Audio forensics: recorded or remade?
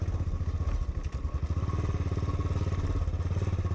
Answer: recorded